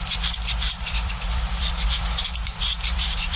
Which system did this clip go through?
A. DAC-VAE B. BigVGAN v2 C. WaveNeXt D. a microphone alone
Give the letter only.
B